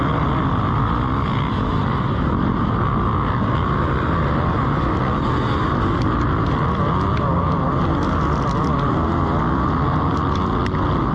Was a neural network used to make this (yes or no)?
no